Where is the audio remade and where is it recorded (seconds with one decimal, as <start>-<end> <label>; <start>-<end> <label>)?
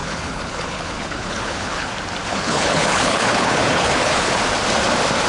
0.0-1.9 remade; 1.9-2.3 recorded; 2.3-4.3 remade; 4.3-5.3 recorded